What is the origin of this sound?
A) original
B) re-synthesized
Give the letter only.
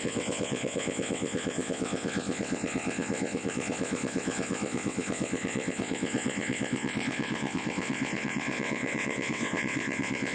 B